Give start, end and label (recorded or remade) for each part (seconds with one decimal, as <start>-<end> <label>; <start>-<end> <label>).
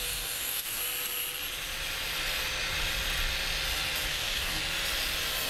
0.0-0.8 remade; 0.8-4.1 recorded; 4.1-4.6 remade; 4.6-5.5 recorded